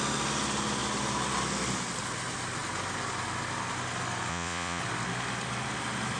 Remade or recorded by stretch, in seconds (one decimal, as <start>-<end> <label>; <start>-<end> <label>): 0.0-4.3 recorded; 4.3-4.8 remade; 4.8-6.2 recorded